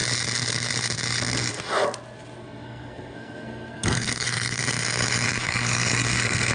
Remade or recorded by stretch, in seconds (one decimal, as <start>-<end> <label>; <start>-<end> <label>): 0.0-2.4 recorded; 2.4-4.6 remade; 4.6-5.4 recorded; 5.4-6.5 remade